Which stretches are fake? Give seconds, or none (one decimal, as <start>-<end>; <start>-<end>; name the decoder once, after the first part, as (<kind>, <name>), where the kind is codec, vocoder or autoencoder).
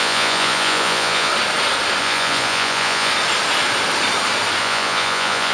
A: 0.0-1.3 (vocoder, Vocos); 2.0-3.1; 4.6-5.5